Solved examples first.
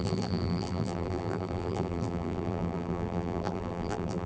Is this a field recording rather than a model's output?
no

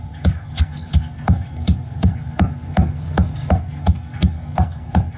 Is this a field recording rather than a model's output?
no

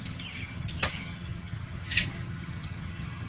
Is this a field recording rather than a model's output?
no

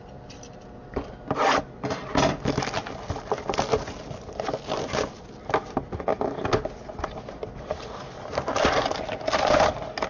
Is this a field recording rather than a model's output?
yes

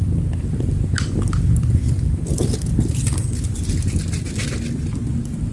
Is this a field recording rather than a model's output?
yes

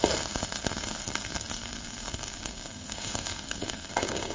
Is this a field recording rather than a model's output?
no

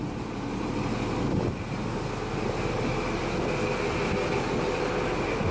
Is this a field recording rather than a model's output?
yes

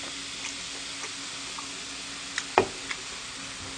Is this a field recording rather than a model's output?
yes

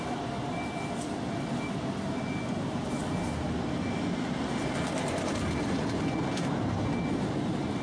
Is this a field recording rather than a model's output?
yes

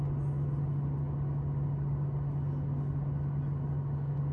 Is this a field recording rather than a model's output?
yes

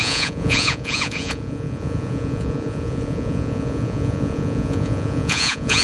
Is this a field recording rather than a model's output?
no